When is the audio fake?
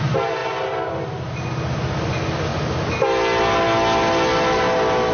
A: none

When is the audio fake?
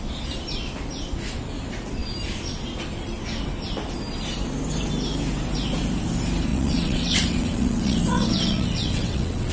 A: 6.5-9.5 (vocoder, WaveNeXt)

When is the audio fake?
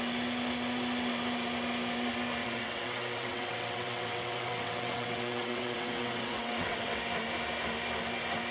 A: 2.4-7.0 (vocoder, WaveNeXt)